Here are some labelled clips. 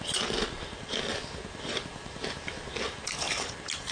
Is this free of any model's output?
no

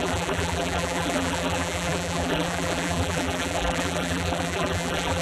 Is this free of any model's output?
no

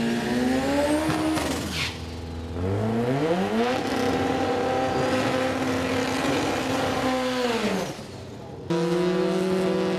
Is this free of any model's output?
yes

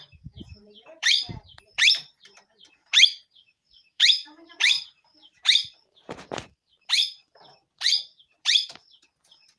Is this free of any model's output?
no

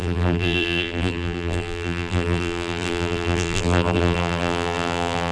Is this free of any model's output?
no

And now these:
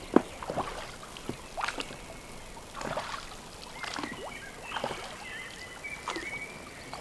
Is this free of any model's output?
yes